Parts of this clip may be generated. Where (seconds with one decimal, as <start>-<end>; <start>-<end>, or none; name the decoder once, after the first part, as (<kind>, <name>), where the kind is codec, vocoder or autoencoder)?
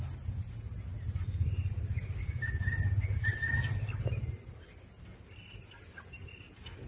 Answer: none